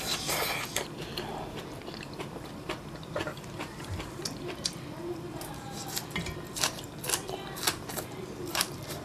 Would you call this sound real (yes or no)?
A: no